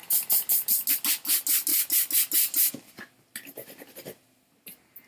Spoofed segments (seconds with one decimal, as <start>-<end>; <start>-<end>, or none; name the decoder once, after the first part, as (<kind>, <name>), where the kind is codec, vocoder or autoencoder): none